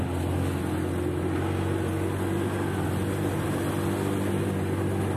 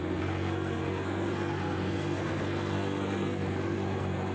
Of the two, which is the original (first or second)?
first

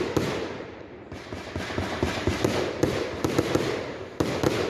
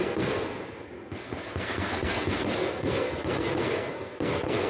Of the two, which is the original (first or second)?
first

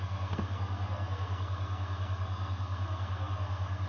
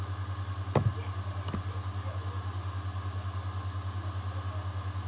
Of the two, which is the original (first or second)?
second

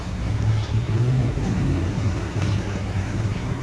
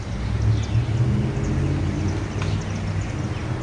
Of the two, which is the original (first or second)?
second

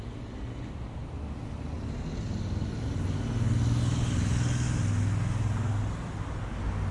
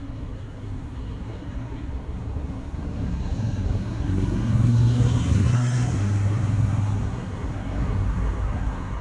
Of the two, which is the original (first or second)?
first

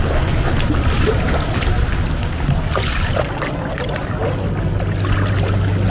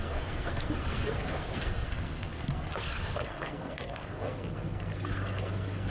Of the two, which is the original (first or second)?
first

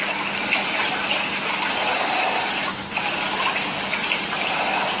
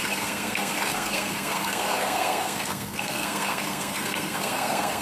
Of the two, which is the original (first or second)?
first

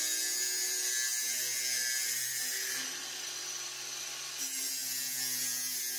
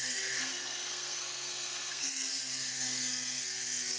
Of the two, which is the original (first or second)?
first